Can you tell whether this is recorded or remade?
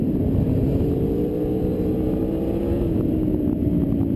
remade